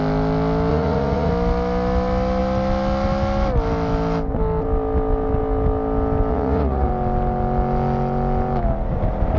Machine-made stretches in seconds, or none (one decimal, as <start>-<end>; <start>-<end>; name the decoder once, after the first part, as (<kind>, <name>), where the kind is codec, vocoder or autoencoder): 0.7-1.3 (vocoder, Vocos); 6.3-6.9